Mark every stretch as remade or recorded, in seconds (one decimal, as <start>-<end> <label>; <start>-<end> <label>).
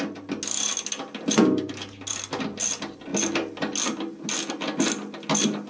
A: 0.0-5.7 recorded